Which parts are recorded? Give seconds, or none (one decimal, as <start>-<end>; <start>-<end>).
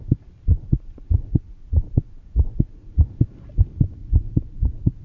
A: 0.0-0.5; 3.0-4.0